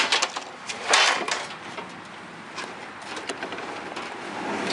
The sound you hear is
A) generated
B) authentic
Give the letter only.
A